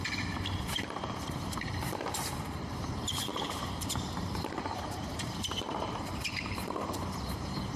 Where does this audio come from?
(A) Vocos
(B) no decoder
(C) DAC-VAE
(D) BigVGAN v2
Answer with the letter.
D